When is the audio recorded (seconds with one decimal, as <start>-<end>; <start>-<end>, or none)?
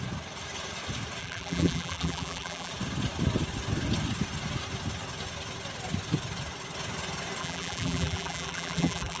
0.0-1.2; 2.7-7.4